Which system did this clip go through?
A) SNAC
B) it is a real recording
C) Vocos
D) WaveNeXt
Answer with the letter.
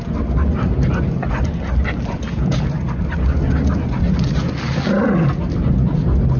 B